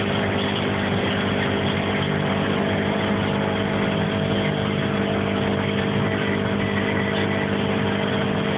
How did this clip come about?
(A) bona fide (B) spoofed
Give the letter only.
A